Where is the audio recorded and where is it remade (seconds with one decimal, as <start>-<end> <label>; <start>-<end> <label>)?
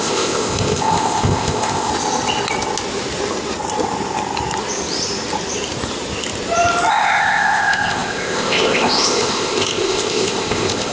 0.0-1.9 remade; 1.9-6.9 recorded; 6.9-10.9 remade